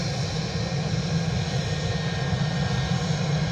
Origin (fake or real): real